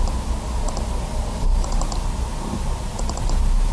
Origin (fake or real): real